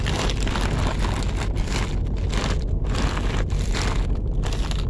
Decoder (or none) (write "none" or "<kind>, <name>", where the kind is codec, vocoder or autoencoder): none